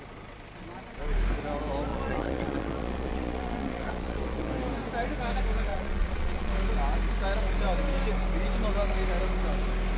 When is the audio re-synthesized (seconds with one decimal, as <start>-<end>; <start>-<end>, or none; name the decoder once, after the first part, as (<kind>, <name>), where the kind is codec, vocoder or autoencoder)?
1.9-4.5 (vocoder, Vocos); 5.7-6.5